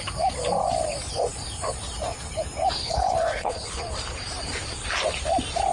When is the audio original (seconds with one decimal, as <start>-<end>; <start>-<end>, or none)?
0.0-2.8; 3.8-5.7